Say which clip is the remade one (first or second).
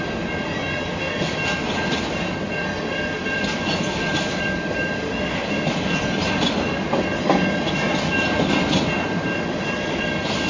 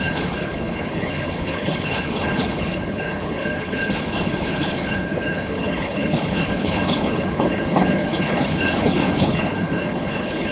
second